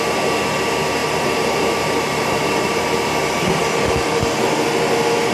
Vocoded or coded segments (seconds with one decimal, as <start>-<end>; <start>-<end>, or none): 1.0-2.8